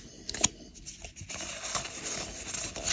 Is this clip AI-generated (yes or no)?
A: no